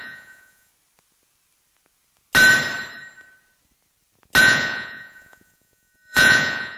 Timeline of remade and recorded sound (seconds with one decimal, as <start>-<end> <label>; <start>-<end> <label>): 0.0-0.7 remade; 0.7-4.4 recorded; 4.4-6.8 remade